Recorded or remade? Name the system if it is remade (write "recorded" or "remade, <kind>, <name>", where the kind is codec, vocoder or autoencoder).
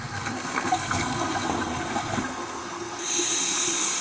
remade, codec, SNAC